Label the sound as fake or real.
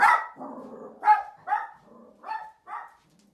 real